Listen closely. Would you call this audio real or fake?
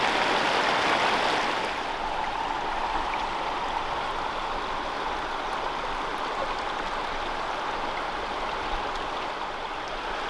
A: real